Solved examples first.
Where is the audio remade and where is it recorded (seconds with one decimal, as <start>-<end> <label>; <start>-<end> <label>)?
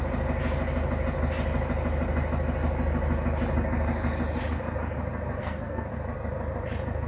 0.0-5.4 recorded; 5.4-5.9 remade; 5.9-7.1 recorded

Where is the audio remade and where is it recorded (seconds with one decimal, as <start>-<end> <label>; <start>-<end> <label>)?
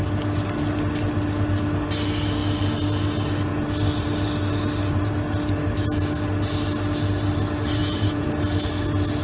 0.0-7.8 recorded; 7.8-8.3 remade; 8.3-9.2 recorded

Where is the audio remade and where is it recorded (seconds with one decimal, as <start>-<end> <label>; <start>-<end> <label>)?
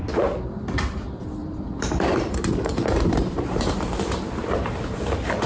0.0-1.4 recorded; 1.4-4.0 remade; 4.0-4.4 recorded; 4.4-5.5 remade